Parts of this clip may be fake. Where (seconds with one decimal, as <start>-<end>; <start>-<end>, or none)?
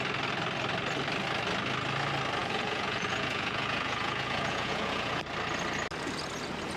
2.4-5.2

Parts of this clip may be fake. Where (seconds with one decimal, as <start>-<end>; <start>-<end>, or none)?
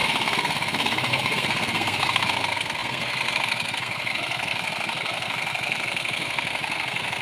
0.0-7.2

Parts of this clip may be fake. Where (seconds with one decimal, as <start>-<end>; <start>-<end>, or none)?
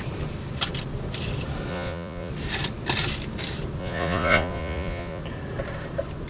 1.7-2.3; 3.8-5.2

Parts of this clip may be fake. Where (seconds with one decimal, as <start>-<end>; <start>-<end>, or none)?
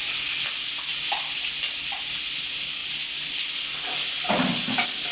none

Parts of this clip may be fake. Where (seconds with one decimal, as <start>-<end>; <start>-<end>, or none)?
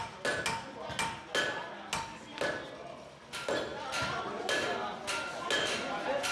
none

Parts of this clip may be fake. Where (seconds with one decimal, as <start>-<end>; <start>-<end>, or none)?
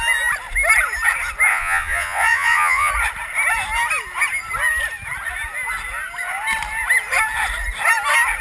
1.5-2.9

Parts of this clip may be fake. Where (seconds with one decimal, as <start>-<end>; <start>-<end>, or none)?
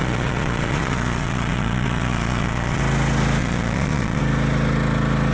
0.0-2.8; 3.4-4.2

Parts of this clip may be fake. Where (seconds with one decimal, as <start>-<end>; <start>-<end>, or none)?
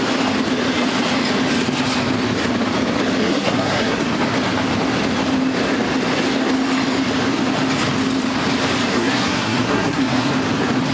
3.2-4.0; 8.9-10.3